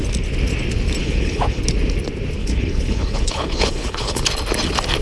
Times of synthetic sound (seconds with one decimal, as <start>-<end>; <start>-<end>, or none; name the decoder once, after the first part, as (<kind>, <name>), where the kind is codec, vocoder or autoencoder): 1.0-1.6 (codec, HILCodec); 2.4-4.2